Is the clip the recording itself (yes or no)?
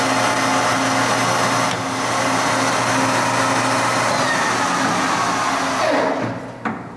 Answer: yes